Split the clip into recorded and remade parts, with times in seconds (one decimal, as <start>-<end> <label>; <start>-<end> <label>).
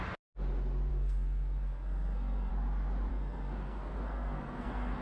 0.0-0.9 recorded; 0.9-2.5 remade; 2.5-3.1 recorded; 3.1-5.0 remade